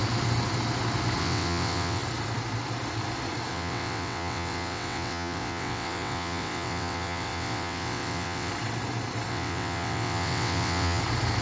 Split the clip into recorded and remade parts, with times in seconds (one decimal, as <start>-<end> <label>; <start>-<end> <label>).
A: 0.0-1.2 recorded; 1.2-2.0 remade; 2.0-3.5 recorded; 3.5-8.5 remade; 8.5-9.3 recorded; 9.3-11.0 remade; 11.0-11.4 recorded